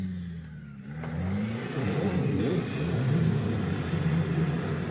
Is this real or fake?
real